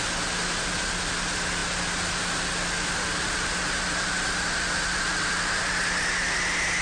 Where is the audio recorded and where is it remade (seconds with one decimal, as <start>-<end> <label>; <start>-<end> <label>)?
0.0-6.8 recorded